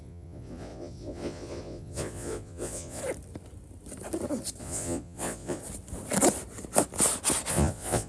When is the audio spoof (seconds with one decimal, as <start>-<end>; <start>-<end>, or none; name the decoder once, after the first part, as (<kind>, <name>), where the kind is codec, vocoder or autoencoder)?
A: 0.0-3.0 (vocoder, Vocos); 4.6-5.6; 7.5-8.1